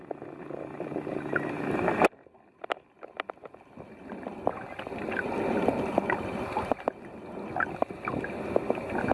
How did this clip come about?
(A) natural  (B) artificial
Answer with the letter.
A